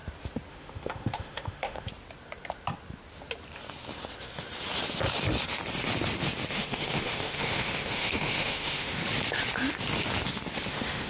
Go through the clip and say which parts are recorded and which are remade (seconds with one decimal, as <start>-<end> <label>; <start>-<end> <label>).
0.0-0.5 recorded; 0.5-1.9 remade; 1.9-6.5 recorded; 6.5-9.0 remade; 9.0-10.7 recorded; 10.7-11.1 remade